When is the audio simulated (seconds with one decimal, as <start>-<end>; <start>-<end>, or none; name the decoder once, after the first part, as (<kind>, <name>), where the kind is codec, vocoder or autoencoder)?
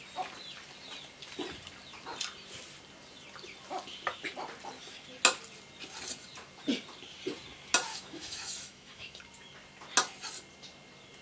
7.9-9.2 (autoencoder, DAC-VAE)